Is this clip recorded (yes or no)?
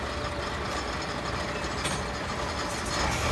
yes